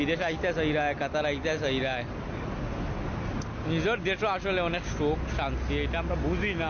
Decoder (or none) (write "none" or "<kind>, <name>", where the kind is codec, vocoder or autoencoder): none